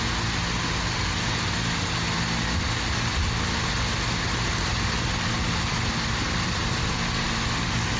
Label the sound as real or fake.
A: real